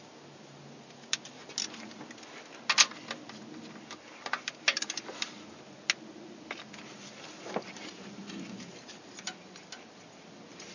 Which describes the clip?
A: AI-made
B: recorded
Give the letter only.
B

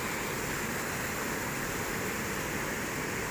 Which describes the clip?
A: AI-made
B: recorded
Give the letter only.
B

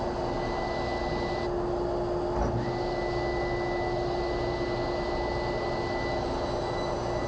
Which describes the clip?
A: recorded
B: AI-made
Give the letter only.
A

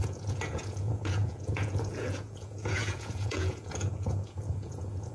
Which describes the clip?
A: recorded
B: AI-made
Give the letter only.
B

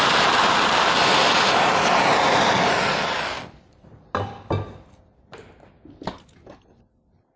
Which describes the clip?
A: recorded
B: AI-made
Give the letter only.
A